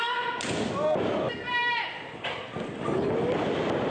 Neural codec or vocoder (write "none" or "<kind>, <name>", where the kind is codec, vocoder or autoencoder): none